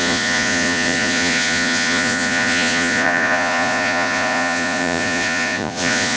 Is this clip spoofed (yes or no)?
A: yes